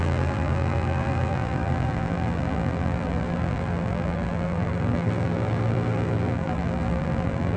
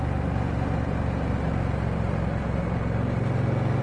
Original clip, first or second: second